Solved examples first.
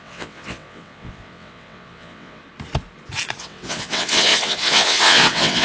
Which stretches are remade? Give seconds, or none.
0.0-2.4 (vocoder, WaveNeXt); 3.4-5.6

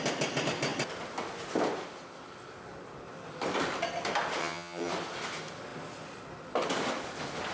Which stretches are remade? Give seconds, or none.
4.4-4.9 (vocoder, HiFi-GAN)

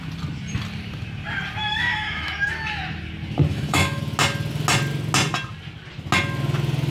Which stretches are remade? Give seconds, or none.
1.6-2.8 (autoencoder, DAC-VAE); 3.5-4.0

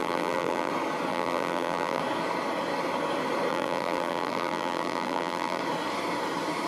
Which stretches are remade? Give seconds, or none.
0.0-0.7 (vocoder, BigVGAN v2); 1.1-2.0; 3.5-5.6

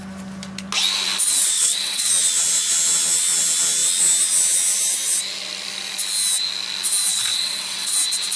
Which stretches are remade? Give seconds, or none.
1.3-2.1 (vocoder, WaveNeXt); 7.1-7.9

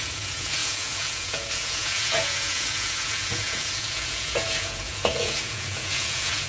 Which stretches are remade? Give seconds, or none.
0.0-6.5 (vocoder, Vocos)

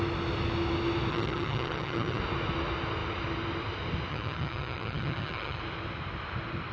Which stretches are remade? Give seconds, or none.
1.1-2.2 (vocoder, HiFi-GAN); 4.1-5.6